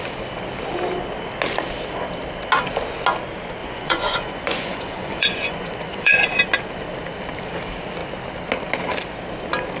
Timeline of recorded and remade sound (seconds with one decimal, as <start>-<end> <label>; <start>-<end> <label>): 0.0-3.6 recorded; 3.6-6.4 remade; 6.4-9.8 recorded

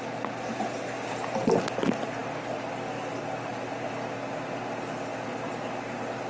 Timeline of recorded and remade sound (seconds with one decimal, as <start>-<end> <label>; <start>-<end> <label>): 0.0-6.3 recorded

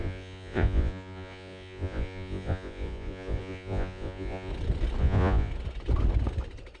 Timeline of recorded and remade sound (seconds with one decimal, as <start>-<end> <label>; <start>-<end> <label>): 0.0-4.5 remade; 4.5-5.0 recorded; 5.0-5.5 remade; 5.5-6.8 recorded

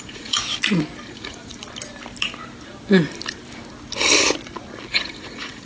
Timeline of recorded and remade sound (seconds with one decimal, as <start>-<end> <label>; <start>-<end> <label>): 0.0-0.4 remade; 0.4-1.1 recorded; 1.1-1.5 remade; 1.5-4.9 recorded; 4.9-5.7 remade

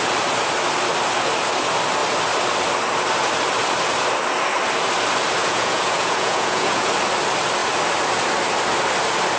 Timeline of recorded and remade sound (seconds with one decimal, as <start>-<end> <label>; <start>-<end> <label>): 0.0-5.4 recorded; 5.4-6.9 remade; 6.9-9.4 recorded

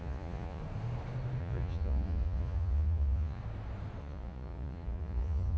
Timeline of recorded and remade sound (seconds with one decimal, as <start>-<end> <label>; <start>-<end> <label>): 0.0-0.6 remade; 0.6-1.4 recorded; 1.4-3.4 remade; 3.4-4.0 recorded; 4.0-5.6 remade

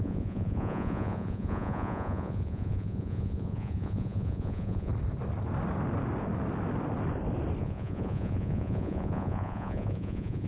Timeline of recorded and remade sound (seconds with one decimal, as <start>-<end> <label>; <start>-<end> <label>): 0.0-4.9 remade; 4.9-7.6 recorded; 7.6-10.5 remade

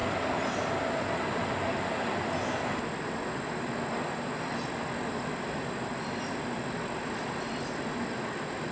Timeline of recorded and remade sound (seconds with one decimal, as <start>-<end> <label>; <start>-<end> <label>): 0.0-8.7 recorded